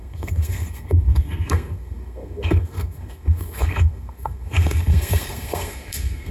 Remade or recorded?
remade